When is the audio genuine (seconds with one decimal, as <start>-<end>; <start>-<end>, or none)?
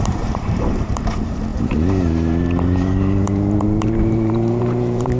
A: none